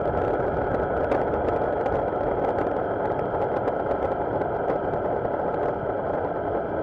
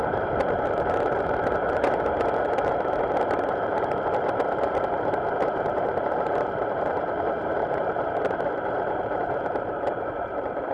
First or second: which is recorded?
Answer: first